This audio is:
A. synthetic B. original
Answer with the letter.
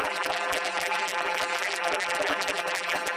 A